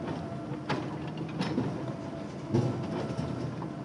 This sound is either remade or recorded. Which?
recorded